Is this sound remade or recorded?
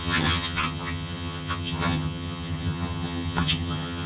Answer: remade